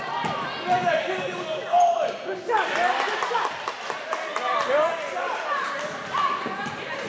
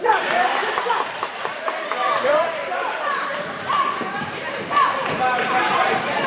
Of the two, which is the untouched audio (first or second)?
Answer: first